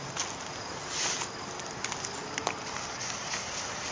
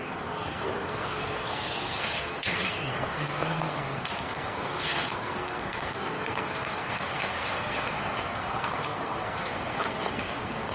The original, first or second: first